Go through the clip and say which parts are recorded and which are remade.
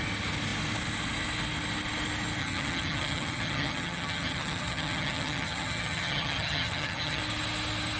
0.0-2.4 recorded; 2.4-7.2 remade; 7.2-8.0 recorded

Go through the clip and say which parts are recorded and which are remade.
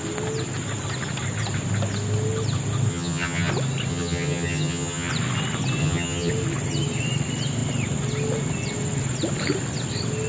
0.0-2.9 recorded; 2.9-3.5 remade; 3.5-3.9 recorded; 3.9-5.1 remade; 5.1-5.8 recorded; 5.8-6.3 remade; 6.3-10.3 recorded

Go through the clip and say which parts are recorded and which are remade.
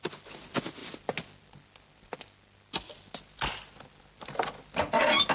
0.0-5.3 recorded